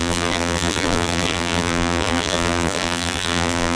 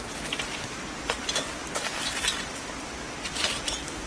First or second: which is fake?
first